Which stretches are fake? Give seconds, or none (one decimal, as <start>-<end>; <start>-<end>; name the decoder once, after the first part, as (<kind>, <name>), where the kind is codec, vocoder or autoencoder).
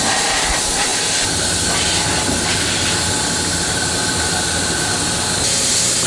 none